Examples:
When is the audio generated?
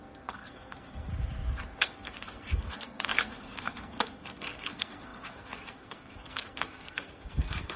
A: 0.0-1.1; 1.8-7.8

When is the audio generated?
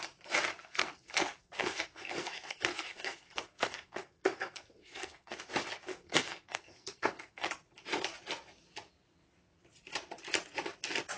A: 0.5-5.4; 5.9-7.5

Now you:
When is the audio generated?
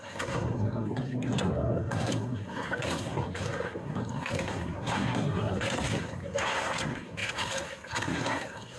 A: 0.0-8.8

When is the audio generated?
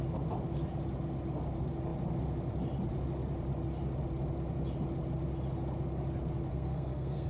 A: 6.5-7.3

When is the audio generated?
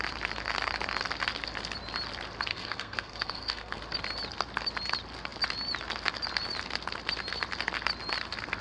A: 2.5-3.8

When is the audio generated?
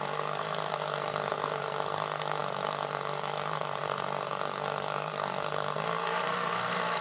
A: 0.0-7.0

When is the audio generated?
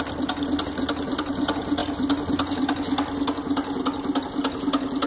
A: none